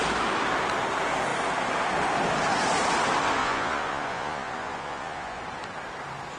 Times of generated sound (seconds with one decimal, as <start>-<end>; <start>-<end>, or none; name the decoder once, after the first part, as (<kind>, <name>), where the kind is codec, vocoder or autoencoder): 3.4-5.4 (vocoder, Vocos)